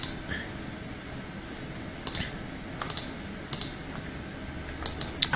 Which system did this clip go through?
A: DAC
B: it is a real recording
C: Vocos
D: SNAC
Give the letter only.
B